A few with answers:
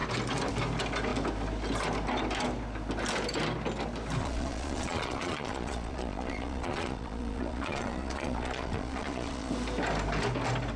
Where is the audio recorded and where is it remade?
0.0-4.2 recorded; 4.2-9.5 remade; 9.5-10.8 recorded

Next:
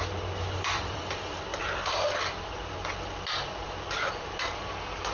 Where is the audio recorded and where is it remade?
0.0-0.4 recorded; 0.4-1.0 remade; 1.0-5.1 recorded

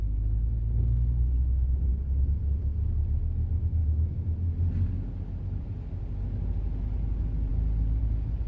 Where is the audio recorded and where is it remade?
0.0-8.5 recorded